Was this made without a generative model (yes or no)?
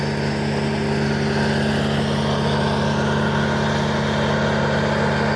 yes